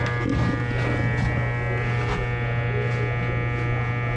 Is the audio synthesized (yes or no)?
no